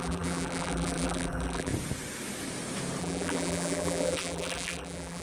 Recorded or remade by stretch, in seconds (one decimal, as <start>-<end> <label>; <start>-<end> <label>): 0.0-1.7 remade; 1.7-3.0 recorded; 3.0-5.2 remade

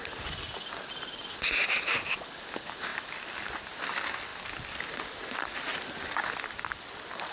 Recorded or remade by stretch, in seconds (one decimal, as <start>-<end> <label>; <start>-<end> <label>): 0.0-7.3 recorded

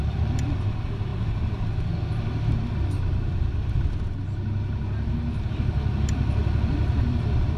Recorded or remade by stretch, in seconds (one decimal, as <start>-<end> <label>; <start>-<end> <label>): 0.0-1.1 remade; 1.1-5.5 recorded; 5.5-7.6 remade

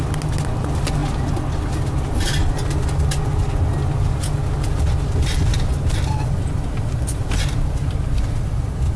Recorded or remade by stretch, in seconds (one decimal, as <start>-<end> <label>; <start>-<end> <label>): 0.0-5.5 recorded; 5.5-7.7 remade; 7.7-9.0 recorded

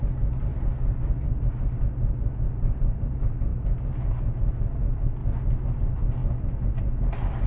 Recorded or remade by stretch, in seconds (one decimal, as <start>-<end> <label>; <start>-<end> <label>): 0.0-0.5 recorded; 0.5-1.5 remade; 1.5-6.2 recorded; 6.2-6.8 remade; 6.8-7.5 recorded

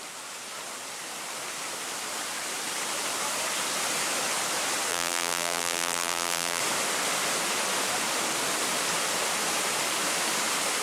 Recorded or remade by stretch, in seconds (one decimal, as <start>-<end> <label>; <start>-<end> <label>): 0.0-4.9 recorded; 4.9-6.6 remade; 6.6-10.8 recorded